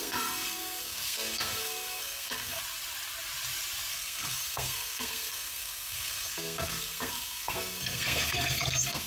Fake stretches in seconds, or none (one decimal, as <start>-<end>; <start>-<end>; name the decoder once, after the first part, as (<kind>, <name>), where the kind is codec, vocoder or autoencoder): 0.0-2.6 (codec, SNAC); 3.9-9.1